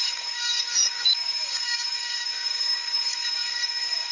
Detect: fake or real fake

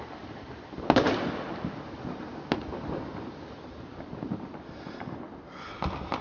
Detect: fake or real real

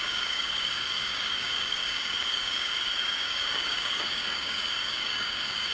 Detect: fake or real fake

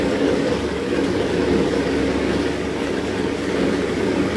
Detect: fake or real fake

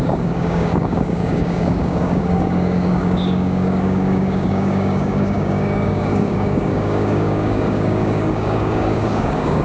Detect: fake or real fake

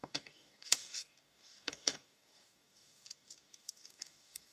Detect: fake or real fake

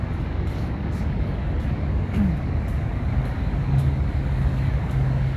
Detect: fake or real fake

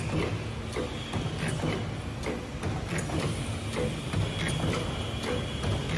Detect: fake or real real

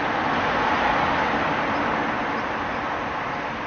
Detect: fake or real real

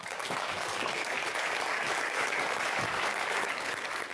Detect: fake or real fake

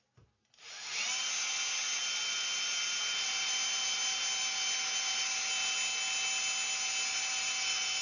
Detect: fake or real real